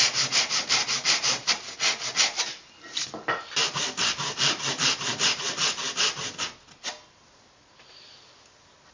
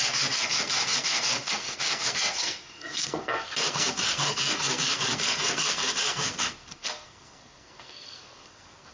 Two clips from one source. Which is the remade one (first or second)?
second